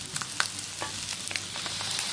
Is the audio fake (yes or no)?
no